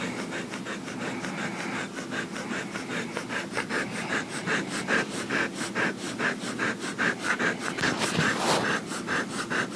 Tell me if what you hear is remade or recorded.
recorded